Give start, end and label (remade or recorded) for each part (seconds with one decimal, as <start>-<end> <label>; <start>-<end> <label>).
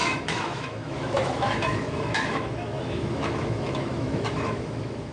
0.0-5.1 remade